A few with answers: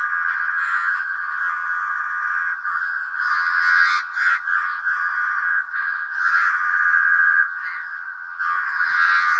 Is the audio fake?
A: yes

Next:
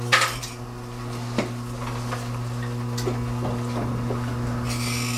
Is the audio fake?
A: no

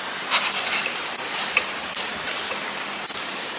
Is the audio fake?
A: yes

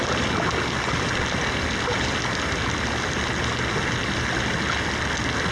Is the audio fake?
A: no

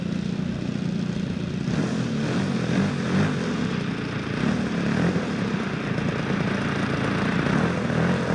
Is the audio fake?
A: no